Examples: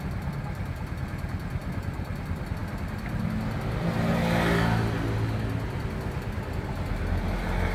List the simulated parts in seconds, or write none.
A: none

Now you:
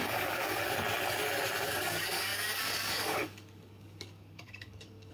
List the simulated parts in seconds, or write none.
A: 0.0-0.6; 1.6-5.1